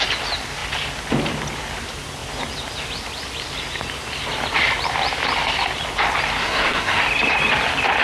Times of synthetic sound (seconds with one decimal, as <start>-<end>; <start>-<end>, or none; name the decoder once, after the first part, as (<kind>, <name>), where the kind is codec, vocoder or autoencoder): 6.4-7.0 (codec, SNAC)